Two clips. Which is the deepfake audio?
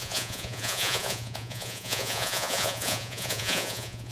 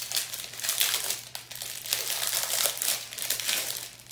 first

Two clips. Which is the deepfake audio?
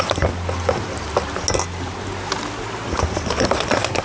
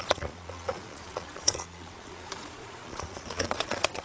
second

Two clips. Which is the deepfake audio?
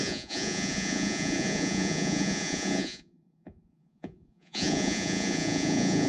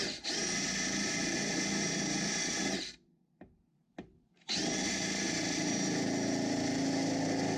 first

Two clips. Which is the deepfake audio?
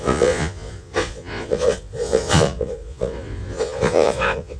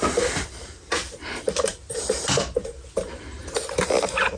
first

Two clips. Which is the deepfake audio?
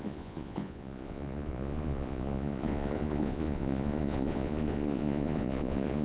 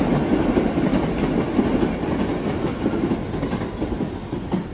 first